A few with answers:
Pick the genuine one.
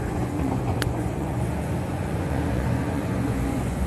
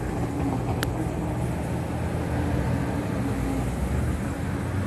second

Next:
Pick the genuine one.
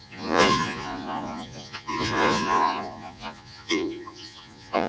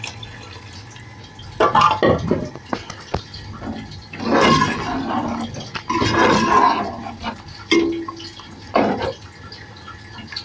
second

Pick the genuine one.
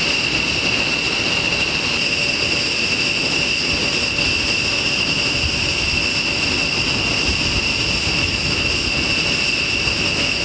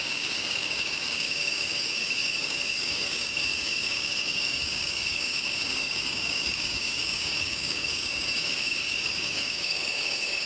first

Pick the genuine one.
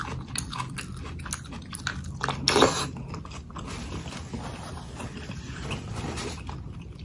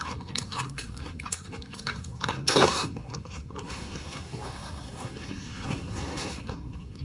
first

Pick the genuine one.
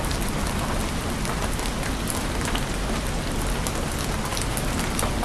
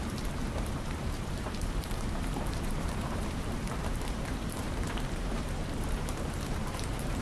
first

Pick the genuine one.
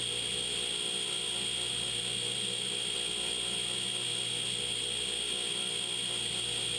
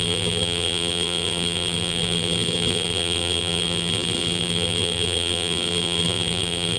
first